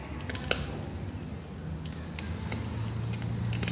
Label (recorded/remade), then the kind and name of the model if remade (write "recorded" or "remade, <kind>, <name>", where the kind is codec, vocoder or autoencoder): recorded